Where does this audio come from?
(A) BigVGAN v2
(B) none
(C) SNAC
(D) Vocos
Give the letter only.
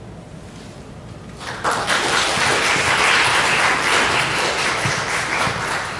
B